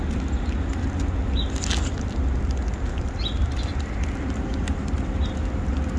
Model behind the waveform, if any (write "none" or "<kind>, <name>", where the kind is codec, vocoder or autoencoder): none